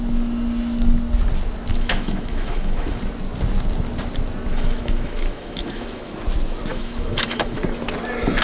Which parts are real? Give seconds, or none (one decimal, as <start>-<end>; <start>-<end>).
0.0-1.7; 3.0-4.5; 6.1-6.7; 7.6-8.4